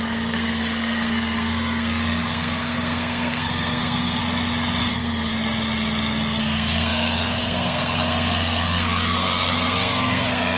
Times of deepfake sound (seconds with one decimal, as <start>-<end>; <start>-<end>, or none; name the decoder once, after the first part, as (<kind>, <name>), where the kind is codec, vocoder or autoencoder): 0.0-4.2 (codec, SNAC); 4.8-5.3; 6.4-10.6